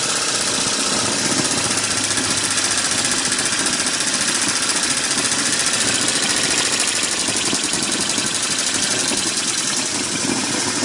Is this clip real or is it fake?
real